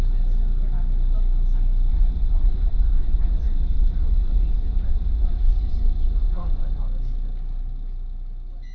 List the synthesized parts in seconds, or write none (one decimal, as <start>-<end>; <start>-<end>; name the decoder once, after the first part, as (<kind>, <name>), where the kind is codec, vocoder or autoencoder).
1.9-6.8 (vocoder, Vocos)